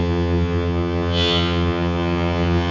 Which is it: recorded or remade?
remade